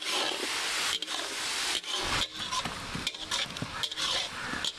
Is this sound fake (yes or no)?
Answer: no